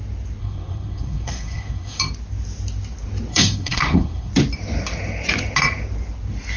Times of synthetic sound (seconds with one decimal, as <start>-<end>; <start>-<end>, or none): 0.4-2.0; 3.3-4.3